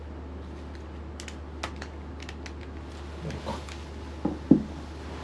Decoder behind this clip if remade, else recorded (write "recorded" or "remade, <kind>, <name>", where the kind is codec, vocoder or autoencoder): recorded